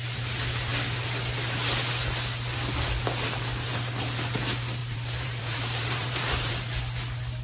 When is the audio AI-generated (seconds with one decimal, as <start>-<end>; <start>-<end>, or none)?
4.8-6.5